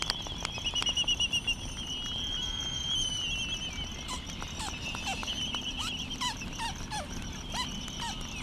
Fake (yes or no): no